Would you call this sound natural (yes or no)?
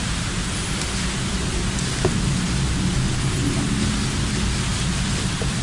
yes